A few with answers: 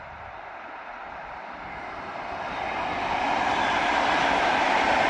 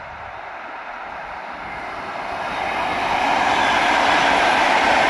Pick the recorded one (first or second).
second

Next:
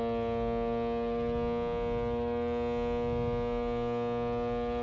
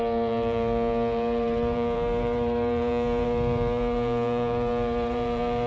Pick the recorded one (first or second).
first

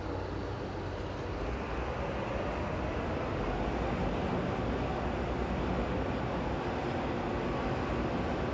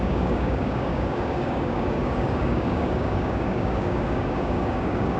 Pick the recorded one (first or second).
first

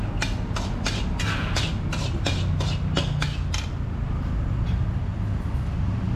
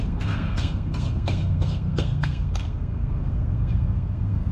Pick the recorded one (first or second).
first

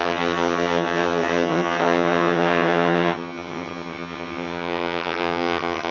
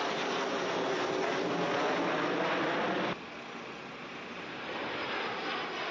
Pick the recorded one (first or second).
second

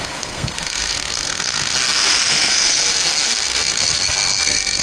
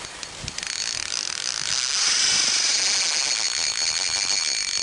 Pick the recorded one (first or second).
second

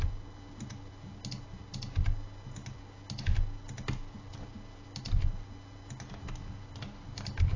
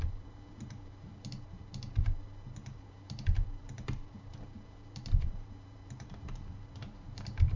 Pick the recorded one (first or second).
first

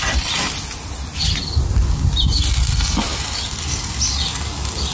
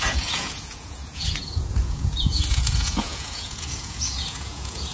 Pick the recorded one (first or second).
first